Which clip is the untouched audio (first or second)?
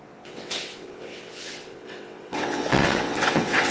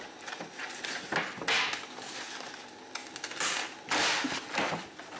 second